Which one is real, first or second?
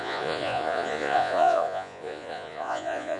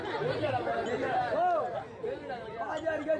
second